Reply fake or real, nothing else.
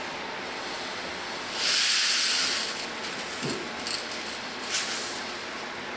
real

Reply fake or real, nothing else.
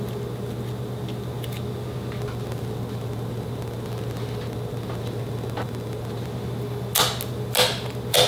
real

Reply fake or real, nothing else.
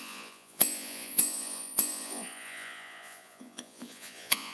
fake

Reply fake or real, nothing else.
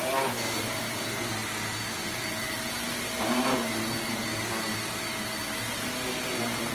real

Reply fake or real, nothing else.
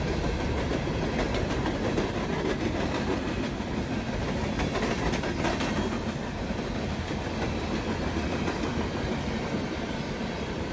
real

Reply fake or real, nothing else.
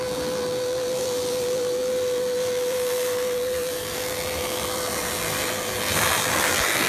fake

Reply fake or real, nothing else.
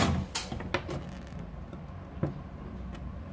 real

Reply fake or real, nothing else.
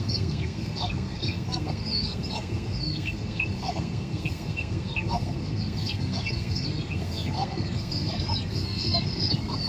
fake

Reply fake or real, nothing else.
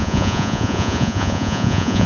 fake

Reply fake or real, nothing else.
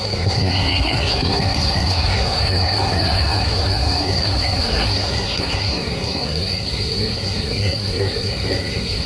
fake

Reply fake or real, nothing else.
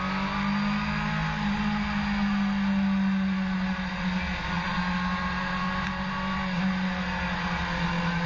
real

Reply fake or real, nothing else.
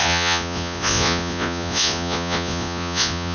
fake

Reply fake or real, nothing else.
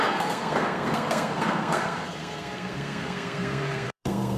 fake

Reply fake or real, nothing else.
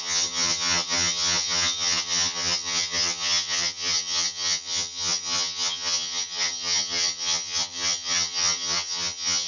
fake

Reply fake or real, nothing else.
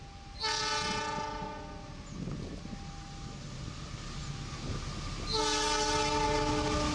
real